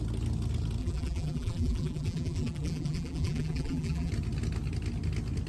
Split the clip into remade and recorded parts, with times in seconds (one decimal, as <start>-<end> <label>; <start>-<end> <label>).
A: 0.0-0.8 recorded; 0.8-4.1 remade; 4.1-5.5 recorded